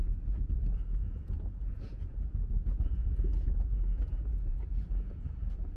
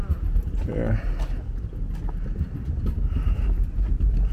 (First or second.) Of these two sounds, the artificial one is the first